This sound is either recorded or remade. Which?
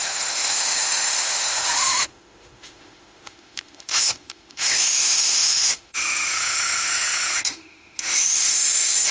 remade